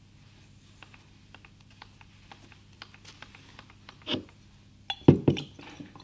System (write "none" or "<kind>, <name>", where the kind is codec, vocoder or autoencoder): none